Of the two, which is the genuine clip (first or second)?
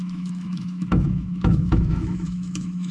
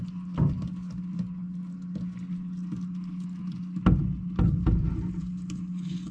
second